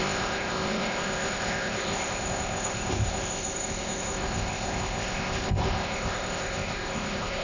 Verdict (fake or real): fake